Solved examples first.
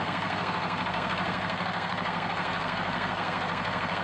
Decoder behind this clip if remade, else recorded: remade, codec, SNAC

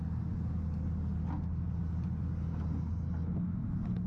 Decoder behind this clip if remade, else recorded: recorded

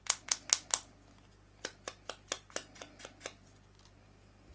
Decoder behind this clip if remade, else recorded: recorded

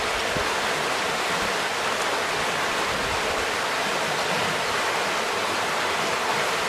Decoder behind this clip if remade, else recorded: recorded